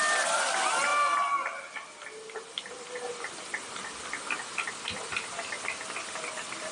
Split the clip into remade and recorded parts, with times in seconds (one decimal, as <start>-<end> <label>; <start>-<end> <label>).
0.0-6.7 recorded